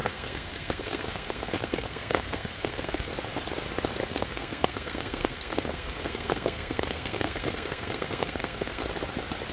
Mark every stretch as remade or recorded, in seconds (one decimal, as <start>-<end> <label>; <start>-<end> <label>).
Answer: 0.0-3.1 remade; 3.1-4.1 recorded; 4.1-8.8 remade; 8.8-9.5 recorded